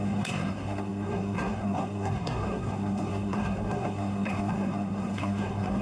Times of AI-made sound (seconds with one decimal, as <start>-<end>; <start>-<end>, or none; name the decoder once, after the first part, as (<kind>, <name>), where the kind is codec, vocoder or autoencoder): 0.0-5.8 (codec, SNAC)